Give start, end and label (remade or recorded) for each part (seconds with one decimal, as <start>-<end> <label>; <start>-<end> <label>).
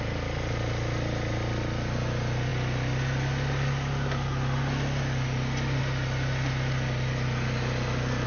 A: 0.0-8.3 recorded